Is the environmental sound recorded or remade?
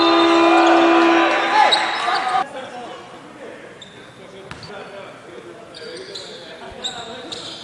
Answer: recorded